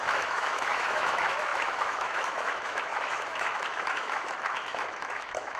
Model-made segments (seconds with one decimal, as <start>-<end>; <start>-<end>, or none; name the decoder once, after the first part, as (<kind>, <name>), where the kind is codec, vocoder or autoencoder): 0.0-5.6 (autoencoder, DAC-VAE)